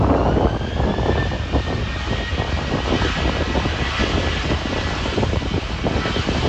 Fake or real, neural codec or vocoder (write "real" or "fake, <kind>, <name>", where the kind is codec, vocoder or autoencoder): fake, vocoder, BigVGAN v2